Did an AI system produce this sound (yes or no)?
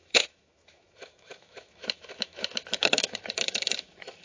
yes